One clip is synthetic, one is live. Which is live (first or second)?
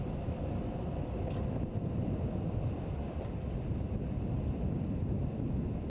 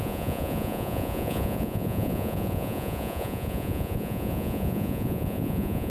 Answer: first